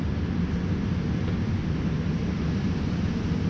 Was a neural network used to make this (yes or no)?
no